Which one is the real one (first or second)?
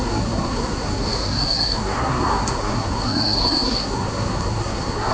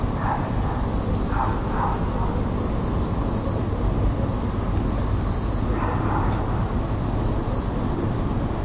second